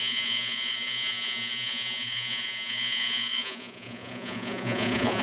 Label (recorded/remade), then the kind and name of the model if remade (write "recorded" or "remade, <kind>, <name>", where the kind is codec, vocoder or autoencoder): remade, vocoder, Vocos